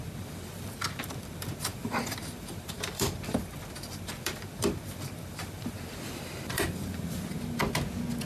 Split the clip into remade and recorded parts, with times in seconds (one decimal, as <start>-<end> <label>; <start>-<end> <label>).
0.0-7.6 remade; 7.6-8.3 recorded